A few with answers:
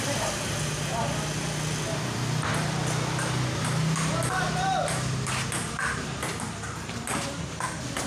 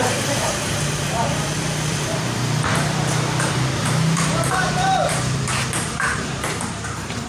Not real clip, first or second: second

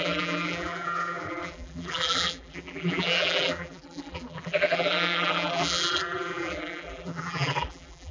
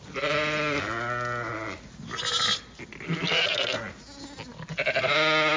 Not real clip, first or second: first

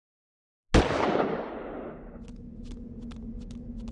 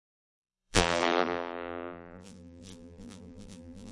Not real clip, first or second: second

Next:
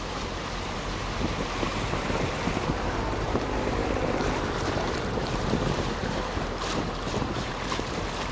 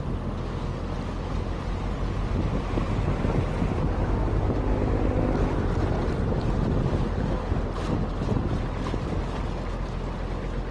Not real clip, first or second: first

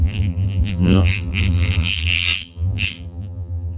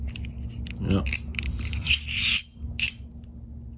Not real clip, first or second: first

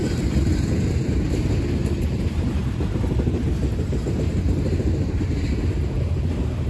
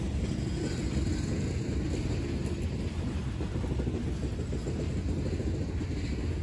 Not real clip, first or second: first